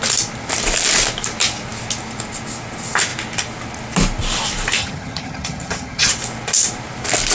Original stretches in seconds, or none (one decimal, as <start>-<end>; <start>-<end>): 0.0-4.8; 6.1-7.3